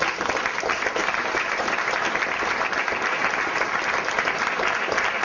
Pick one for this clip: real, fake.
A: real